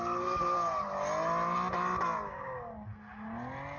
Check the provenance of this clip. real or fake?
real